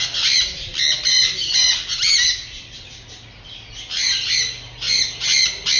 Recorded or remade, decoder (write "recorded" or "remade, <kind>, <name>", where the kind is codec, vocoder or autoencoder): recorded